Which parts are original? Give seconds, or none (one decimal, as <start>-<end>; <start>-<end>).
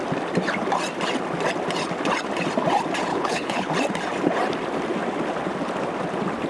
0.0-3.1; 3.7-6.5